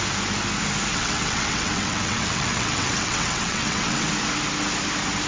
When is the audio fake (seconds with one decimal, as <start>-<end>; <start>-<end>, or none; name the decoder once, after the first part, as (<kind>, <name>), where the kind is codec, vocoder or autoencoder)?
0.9-4.1 (vocoder, WaveNeXt)